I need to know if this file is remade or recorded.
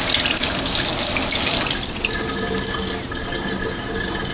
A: recorded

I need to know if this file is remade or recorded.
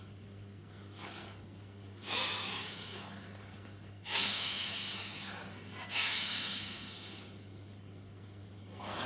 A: remade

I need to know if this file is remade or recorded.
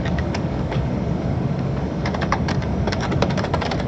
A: remade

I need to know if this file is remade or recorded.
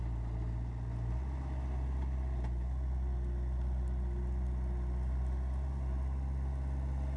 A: recorded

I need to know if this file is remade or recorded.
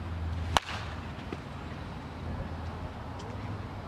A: recorded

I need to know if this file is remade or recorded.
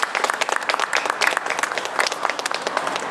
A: recorded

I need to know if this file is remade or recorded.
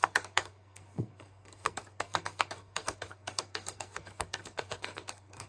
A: remade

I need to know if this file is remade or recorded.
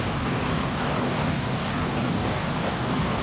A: remade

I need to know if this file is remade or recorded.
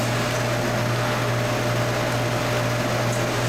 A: recorded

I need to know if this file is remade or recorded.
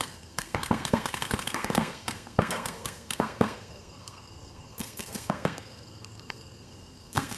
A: remade